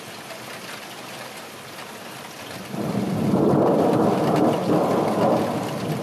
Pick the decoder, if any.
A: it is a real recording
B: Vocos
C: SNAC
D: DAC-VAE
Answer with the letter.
A